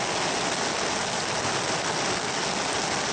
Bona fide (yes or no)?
yes